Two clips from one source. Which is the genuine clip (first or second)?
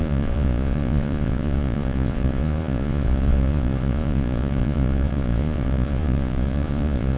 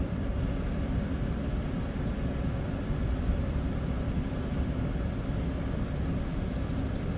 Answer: second